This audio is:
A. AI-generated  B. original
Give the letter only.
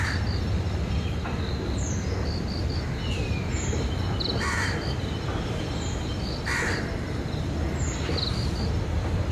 B